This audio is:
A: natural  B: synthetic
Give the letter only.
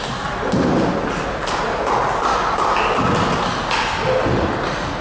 A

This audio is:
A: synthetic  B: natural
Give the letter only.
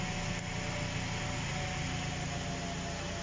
B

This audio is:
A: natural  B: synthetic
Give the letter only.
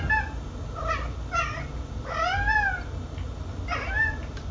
A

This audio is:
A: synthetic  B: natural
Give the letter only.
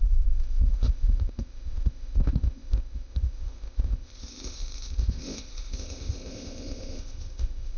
A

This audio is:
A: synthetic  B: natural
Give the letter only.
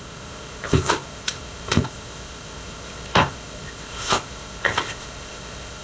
A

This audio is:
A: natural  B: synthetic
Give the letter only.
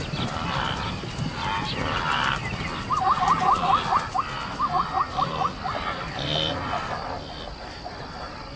A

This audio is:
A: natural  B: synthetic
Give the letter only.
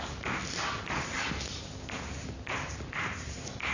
A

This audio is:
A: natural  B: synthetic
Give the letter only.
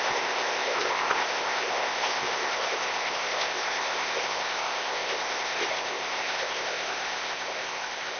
B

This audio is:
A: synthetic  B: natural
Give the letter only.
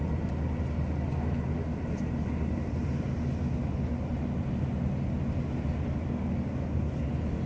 B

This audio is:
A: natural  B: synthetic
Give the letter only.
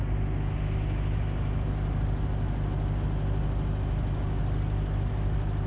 A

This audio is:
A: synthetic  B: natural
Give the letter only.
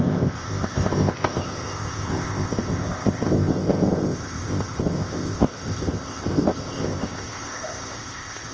A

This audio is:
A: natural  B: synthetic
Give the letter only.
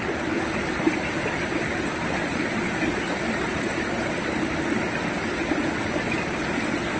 A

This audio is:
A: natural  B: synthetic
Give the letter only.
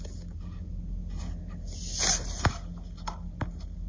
A